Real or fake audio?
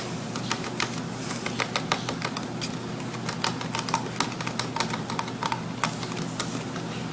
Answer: real